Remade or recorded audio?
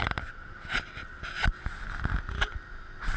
recorded